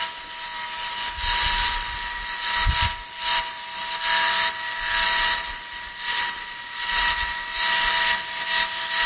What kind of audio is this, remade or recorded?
recorded